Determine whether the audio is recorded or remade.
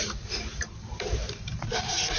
remade